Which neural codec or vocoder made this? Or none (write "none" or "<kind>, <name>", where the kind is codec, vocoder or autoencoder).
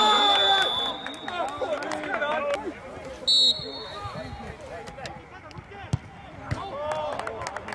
none